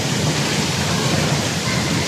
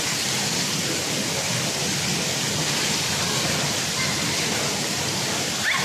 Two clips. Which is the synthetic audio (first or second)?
first